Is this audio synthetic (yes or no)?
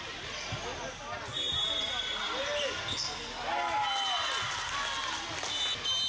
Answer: no